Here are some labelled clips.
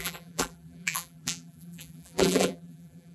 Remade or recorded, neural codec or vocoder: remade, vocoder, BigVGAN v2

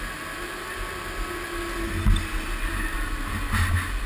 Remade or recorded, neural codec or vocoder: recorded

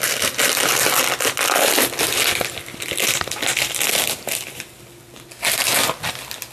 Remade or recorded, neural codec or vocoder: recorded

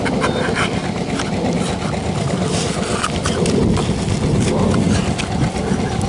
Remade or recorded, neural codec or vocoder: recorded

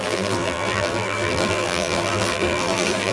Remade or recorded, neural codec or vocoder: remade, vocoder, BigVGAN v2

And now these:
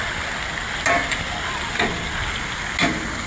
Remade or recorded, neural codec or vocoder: recorded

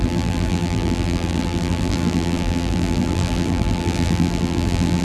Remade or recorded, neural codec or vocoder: remade, vocoder, BigVGAN v2